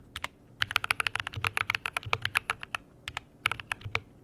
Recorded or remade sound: recorded